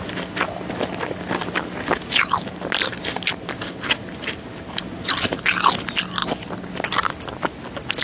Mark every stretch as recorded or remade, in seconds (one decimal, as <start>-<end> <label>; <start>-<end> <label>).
0.0-8.0 recorded